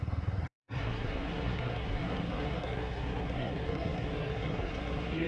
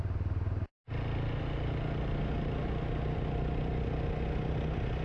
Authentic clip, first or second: second